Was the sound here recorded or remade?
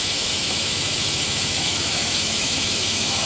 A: remade